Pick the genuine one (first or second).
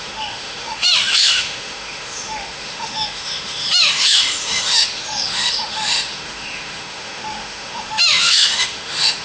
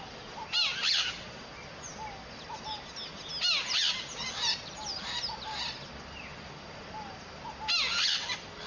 second